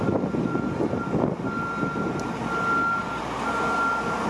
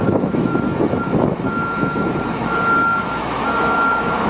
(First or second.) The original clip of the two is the first